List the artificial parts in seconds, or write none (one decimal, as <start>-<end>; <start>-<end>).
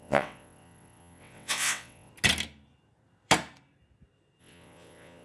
0.0-2.1; 4.4-5.2